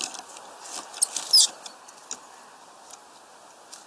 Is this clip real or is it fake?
real